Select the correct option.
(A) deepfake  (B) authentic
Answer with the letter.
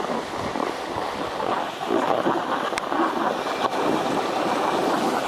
B